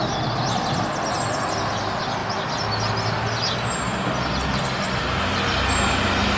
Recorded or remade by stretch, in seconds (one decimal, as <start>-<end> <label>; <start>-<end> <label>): 0.0-6.4 recorded